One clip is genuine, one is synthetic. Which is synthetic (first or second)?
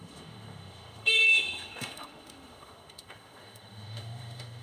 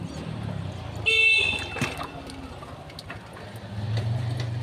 first